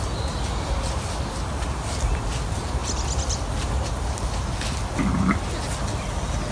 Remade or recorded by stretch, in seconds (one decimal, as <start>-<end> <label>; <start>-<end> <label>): 0.0-6.5 recorded